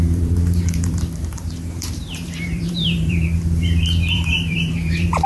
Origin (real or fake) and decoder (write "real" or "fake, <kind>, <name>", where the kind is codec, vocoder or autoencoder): fake, vocoder, BigVGAN v2